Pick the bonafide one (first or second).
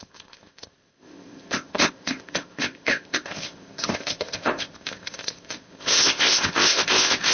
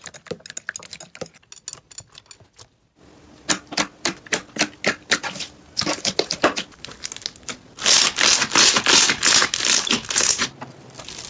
second